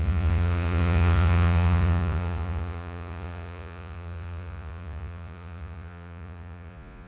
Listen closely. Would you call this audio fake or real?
fake